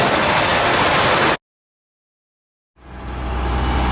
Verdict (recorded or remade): recorded